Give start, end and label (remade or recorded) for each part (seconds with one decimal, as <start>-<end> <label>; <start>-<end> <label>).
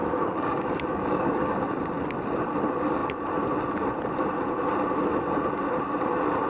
0.0-1.5 remade; 1.5-6.5 recorded